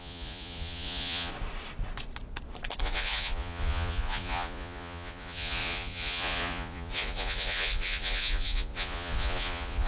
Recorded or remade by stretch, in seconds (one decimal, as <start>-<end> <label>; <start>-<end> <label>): 0.0-1.3 remade; 1.3-2.8 recorded; 2.8-9.9 remade